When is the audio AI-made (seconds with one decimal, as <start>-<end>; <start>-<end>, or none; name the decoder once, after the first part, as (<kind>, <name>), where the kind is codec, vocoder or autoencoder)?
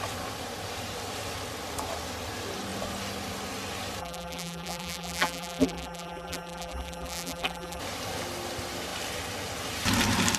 4.0-7.8 (vocoder, BigVGAN v2)